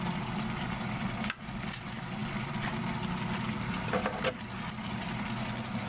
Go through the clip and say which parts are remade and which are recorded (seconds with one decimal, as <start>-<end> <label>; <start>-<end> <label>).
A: 0.0-5.9 recorded